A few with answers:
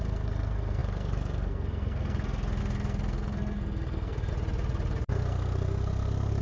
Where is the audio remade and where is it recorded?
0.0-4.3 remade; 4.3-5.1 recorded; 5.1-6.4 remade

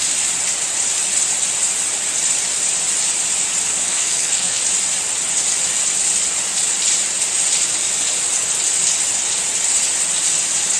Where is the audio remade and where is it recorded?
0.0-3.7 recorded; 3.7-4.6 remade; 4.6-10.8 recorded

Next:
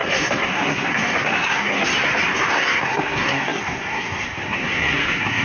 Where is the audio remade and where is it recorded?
0.0-1.9 remade; 1.9-2.5 recorded; 2.5-5.4 remade